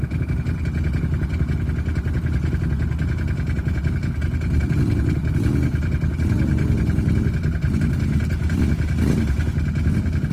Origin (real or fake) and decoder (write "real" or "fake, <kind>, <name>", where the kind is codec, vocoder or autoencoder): real